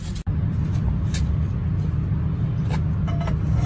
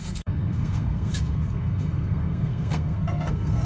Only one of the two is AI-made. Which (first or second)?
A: second